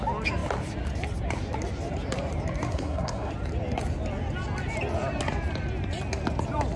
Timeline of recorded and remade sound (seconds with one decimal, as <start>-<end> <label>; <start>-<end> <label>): 0.0-2.7 recorded; 2.7-3.3 remade; 3.3-6.8 recorded